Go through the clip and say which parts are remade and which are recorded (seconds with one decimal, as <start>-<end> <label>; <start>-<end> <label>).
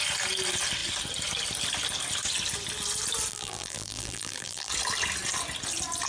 0.0-3.3 recorded; 3.3-4.7 remade; 4.7-6.1 recorded